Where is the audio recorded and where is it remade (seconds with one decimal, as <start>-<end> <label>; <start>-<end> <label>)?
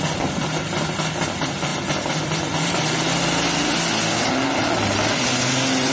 0.0-5.9 recorded